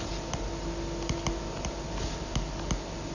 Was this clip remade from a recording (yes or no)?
no